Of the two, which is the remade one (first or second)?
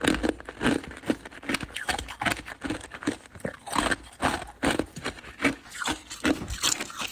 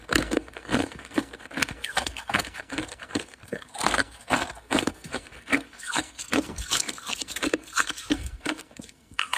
second